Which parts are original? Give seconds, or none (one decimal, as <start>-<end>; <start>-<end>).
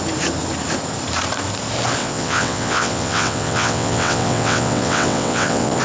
0.0-2.0